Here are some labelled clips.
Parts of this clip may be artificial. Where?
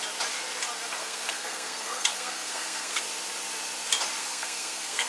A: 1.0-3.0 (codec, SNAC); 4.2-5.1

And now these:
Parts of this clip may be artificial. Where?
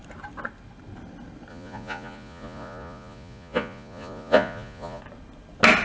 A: 1.5-5.0 (vocoder, Vocos)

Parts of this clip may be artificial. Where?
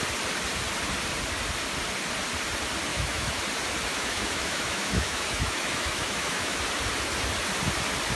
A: 2.9-3.4 (autoencoder, DAC-VAE); 3.9-6.6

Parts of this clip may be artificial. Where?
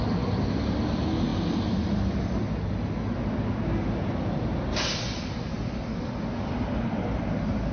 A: none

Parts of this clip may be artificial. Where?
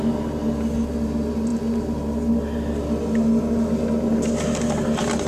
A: none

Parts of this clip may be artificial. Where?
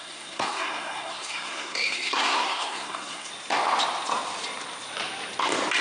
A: 0.0-3.3 (codec, SNAC)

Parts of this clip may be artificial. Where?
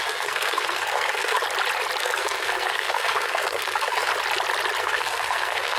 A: 0.0-1.4 (codec, SNAC); 2.0-4.1; 4.8-5.8